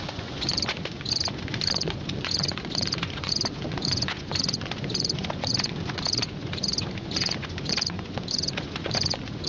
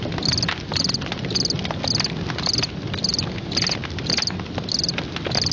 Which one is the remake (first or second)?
first